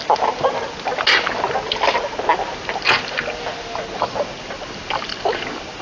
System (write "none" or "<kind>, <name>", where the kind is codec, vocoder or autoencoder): none